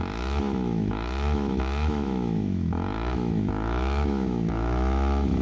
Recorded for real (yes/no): no